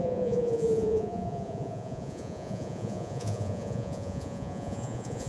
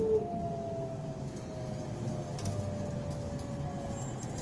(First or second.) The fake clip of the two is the first